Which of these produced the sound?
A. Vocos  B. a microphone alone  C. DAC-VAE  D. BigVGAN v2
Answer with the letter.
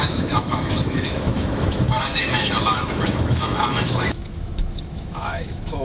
C